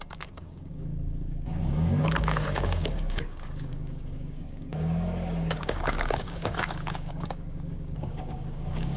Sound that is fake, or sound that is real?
fake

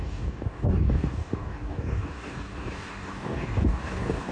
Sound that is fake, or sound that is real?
fake